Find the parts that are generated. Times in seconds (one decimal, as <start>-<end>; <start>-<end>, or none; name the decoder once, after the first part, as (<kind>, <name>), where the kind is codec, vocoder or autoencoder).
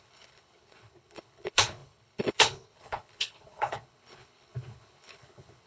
0.0-5.7 (codec, HILCodec)